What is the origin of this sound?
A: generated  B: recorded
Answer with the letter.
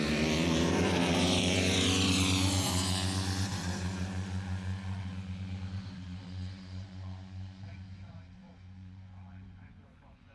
A